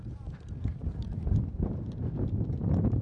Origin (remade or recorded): recorded